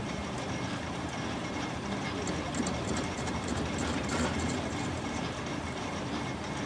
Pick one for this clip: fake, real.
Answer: fake